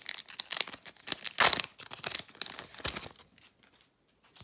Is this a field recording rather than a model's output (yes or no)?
yes